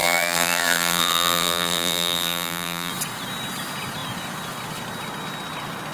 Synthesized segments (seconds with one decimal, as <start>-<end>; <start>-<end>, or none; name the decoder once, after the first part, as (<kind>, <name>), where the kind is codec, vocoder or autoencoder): 0.0-2.9 (vocoder, BigVGAN v2)